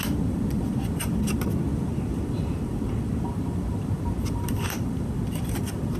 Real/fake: fake